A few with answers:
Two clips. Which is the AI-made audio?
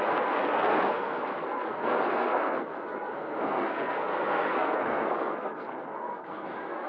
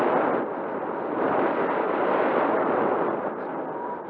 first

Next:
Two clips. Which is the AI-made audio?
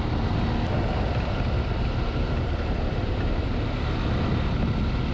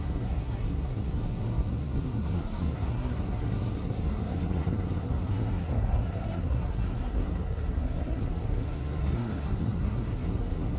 second